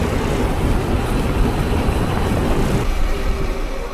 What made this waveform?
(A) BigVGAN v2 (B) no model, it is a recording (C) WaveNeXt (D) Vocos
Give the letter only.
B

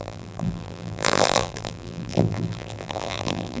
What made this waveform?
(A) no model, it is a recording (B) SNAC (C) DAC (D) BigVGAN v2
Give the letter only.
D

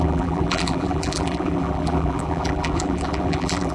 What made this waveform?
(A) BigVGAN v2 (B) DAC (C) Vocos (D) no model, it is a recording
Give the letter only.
A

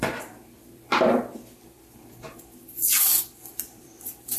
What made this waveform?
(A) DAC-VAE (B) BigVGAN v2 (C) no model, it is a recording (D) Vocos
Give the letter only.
B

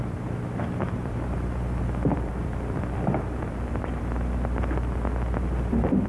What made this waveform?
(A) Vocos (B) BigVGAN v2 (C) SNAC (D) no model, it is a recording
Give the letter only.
B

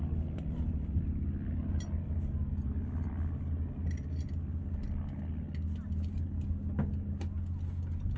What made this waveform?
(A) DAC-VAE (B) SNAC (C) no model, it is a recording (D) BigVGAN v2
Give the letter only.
C